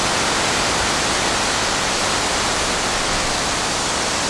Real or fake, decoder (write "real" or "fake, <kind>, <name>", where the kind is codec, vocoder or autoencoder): fake, vocoder, BigVGAN v2